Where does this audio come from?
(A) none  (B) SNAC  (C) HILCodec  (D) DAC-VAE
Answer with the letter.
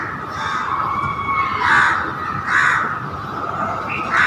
A